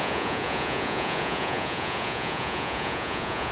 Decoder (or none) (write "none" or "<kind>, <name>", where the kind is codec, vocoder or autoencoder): vocoder, Vocos